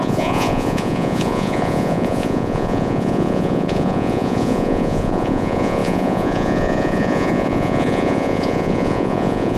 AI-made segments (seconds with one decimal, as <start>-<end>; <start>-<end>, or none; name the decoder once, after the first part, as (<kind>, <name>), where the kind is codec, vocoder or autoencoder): 0.0-9.6 (vocoder, Vocos)